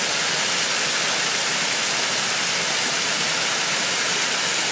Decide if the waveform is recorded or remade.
recorded